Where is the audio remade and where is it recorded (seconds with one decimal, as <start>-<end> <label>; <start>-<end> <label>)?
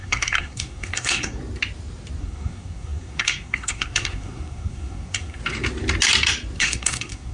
0.0-1.4 remade; 1.4-2.2 recorded; 2.2-5.4 remade; 5.4-6.6 recorded; 6.6-7.3 remade